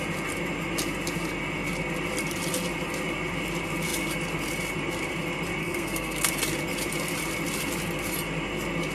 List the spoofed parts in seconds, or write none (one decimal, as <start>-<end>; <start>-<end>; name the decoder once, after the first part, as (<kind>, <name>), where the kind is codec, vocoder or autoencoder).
5.6-6.3 (codec, SNAC)